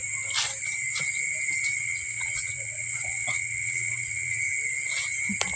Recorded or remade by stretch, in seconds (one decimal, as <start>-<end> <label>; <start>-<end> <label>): 0.0-1.8 recorded; 1.8-4.4 remade; 4.4-5.6 recorded